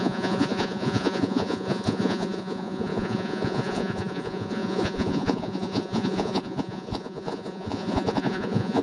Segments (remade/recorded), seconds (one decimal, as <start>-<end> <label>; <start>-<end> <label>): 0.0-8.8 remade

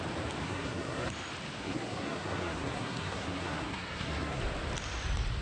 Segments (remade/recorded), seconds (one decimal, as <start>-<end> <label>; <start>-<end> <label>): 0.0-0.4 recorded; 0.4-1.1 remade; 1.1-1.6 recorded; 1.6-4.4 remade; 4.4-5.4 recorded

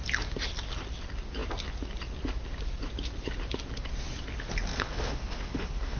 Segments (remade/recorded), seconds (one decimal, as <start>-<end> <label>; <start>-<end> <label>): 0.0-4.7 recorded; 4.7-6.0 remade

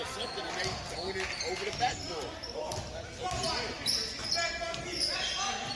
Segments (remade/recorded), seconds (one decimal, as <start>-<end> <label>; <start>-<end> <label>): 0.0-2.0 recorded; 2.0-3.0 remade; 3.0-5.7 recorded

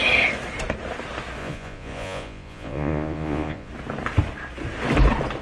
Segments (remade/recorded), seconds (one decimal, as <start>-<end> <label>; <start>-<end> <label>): 0.0-1.4 recorded; 1.4-3.7 remade; 3.7-5.4 recorded

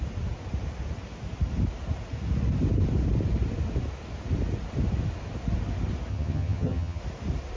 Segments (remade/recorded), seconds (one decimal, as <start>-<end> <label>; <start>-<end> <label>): 0.0-6.1 recorded; 6.1-7.0 remade; 7.0-7.6 recorded